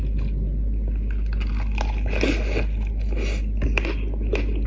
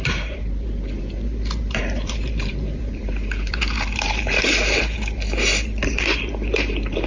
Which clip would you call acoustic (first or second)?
first